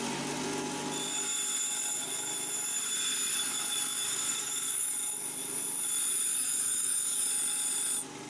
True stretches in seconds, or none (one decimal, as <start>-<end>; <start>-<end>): 0.0-3.3; 4.9-6.3; 7.3-8.3